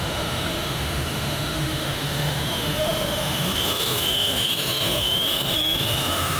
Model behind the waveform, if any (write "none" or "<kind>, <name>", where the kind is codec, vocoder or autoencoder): autoencoder, DAC-VAE